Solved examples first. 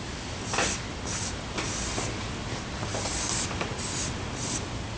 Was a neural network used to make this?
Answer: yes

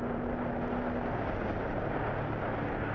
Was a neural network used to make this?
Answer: no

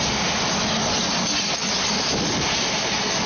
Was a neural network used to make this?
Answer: no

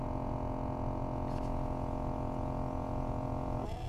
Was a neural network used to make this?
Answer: no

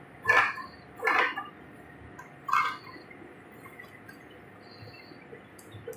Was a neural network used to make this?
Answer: no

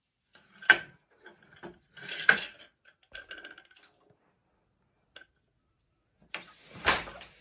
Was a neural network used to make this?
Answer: no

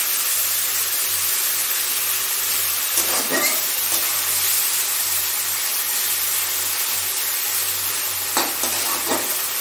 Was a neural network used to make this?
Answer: no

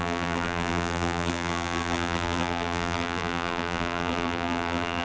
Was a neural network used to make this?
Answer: yes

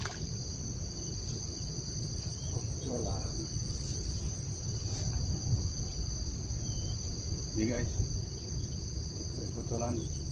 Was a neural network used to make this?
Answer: yes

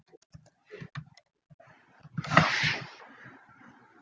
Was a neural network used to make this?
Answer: no